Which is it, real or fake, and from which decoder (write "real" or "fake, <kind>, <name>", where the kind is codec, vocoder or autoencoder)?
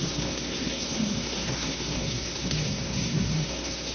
fake, codec, SNAC